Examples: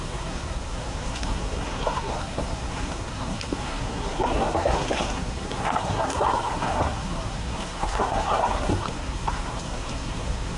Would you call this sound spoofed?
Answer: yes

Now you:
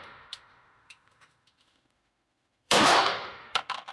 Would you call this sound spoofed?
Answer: yes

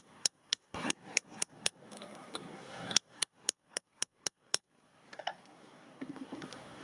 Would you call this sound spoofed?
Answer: yes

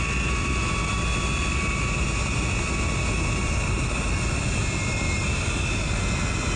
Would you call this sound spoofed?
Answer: no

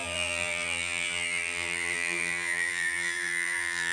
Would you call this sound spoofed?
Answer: yes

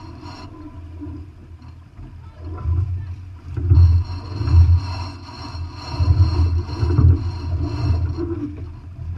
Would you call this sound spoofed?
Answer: no